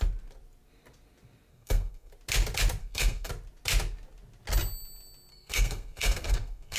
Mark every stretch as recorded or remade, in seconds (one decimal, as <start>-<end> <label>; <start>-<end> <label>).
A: 0.0-1.5 recorded; 1.5-2.1 remade; 2.1-2.8 recorded; 2.8-3.3 remade; 3.3-5.3 recorded; 5.3-6.8 remade